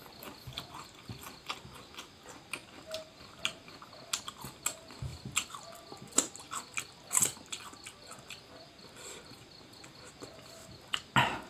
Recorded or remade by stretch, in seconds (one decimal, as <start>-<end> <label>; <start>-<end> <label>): 0.0-11.5 recorded